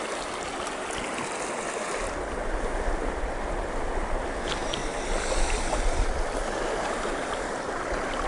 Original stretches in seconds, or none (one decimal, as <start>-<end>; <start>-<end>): 0.0-8.3